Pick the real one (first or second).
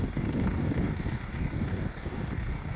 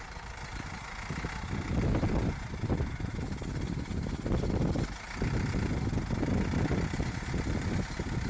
second